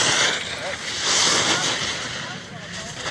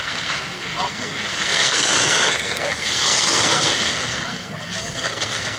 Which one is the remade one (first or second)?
second